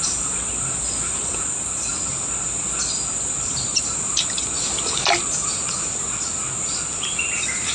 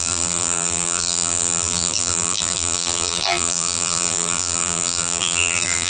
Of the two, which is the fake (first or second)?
second